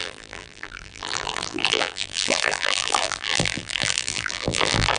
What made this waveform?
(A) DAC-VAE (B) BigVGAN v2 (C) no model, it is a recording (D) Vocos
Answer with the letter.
B